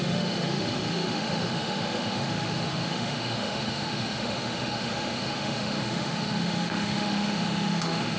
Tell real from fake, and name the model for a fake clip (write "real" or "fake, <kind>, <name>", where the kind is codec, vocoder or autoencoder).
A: fake, autoencoder, DAC-VAE